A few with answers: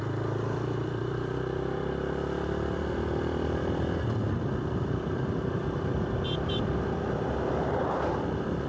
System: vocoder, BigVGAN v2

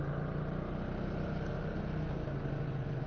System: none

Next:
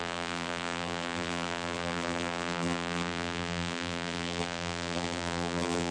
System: vocoder, BigVGAN v2